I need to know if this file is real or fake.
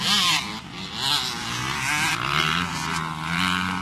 real